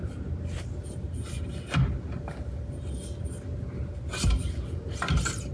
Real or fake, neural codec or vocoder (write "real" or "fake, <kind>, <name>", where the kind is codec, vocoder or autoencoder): real